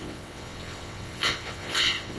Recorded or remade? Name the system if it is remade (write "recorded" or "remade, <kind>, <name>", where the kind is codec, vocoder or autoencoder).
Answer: remade, vocoder, WaveNeXt